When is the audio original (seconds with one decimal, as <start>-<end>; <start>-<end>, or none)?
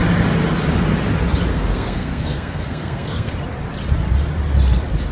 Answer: 0.0-1.5; 3.3-5.1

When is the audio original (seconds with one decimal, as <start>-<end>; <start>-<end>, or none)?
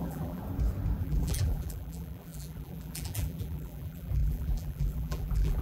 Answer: 0.4-1.0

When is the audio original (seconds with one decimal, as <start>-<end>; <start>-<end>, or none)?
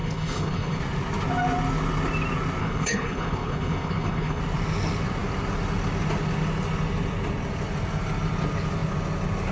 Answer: 0.8-2.6; 4.4-9.5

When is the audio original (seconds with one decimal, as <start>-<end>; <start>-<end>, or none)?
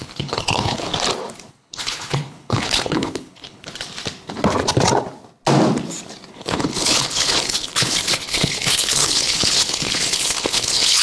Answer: 0.9-1.5; 3.7-6.3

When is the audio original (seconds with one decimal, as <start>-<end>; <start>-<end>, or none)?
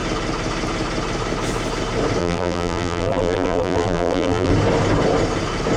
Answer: 0.0-2.2; 4.5-5.8